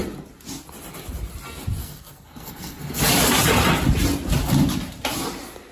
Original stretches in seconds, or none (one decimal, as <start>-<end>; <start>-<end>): 0.0-1.8; 3.0-5.7